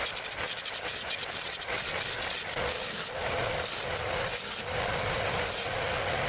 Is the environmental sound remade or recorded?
recorded